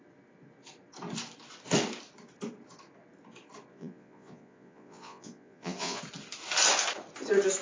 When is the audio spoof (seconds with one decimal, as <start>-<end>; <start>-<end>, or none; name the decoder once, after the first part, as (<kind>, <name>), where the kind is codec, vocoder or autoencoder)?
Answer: 3.7-6.0 (vocoder, Vocos)